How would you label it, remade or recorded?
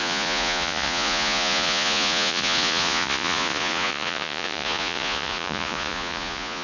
remade